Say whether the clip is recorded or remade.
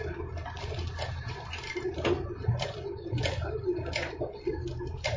recorded